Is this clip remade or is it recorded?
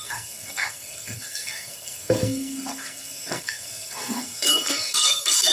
remade